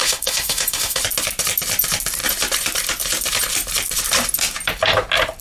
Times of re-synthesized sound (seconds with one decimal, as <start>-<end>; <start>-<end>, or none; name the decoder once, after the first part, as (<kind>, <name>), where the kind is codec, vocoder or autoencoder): 0.0-1.0 (autoencoder, DAC-VAE)